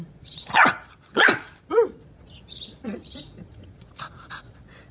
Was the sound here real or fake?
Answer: fake